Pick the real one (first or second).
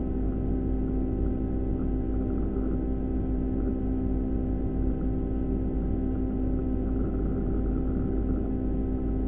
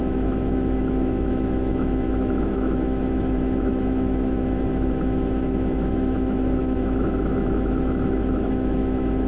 first